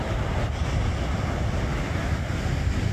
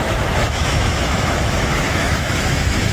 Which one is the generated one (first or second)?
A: second